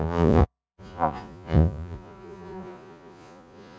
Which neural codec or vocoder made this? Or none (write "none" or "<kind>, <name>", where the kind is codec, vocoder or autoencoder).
vocoder, Vocos